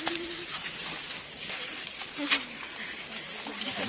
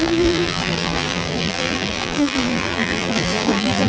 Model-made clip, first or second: second